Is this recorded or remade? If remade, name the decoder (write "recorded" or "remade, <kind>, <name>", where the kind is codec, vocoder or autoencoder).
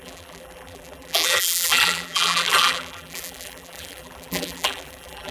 remade, vocoder, BigVGAN v2